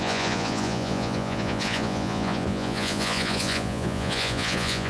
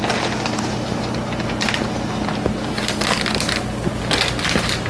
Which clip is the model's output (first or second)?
first